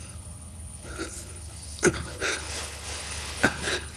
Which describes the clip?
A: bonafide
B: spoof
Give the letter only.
B